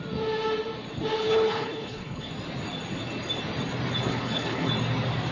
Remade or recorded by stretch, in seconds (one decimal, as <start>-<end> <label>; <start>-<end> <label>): 0.0-1.2 recorded; 1.2-2.3 remade; 2.3-4.1 recorded; 4.1-4.7 remade; 4.7-5.3 recorded